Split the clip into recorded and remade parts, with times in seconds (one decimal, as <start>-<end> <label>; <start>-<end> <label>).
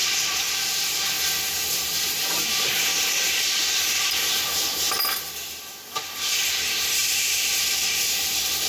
0.0-8.7 remade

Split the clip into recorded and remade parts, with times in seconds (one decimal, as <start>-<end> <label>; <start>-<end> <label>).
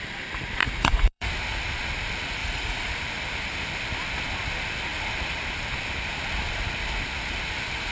0.0-0.6 recorded; 0.6-1.3 remade; 1.3-2.4 recorded; 2.4-2.9 remade; 2.9-7.9 recorded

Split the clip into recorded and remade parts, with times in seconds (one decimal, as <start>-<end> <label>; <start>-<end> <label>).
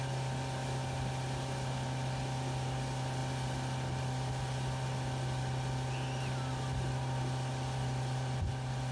0.0-8.9 recorded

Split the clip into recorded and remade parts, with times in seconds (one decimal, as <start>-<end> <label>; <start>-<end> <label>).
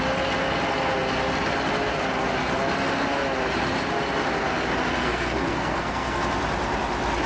0.0-5.0 recorded; 5.0-6.2 remade; 6.2-7.3 recorded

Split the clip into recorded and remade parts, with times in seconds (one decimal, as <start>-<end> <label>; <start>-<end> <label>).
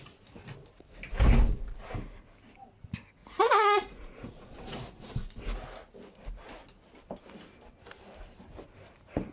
0.0-3.2 recorded; 3.2-5.4 remade; 5.4-9.3 recorded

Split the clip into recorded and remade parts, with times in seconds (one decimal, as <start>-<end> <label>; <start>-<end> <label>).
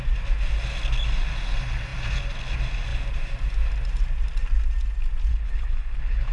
0.0-5.3 recorded; 5.3-6.3 remade